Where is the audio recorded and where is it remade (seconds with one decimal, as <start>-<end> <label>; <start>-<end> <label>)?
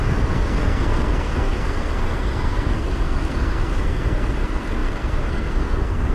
0.0-6.1 remade